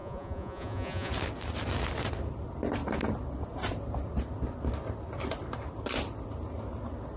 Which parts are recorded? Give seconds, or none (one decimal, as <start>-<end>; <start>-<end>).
1.1-7.2